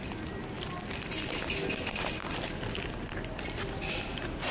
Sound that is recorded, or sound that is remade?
recorded